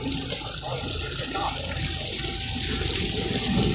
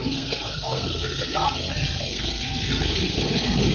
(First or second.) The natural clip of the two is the first